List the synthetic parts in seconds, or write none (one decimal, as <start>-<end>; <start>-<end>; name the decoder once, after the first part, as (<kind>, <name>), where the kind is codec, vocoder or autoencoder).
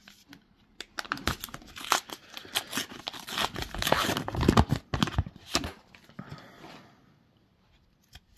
none